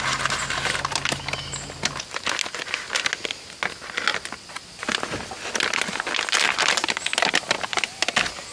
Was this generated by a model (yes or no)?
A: no